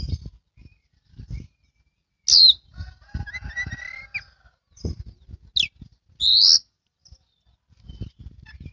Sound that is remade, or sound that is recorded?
recorded